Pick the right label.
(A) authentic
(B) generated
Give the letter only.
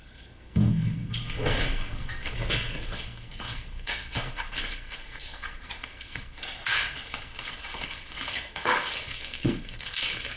B